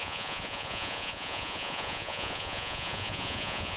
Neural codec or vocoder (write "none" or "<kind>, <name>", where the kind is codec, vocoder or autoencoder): vocoder, Vocos